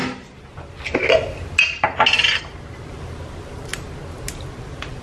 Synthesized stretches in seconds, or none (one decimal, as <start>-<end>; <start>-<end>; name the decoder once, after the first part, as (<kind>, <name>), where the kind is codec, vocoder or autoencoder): 3.0-3.7 (vocoder, BigVGAN v2); 4.6-5.0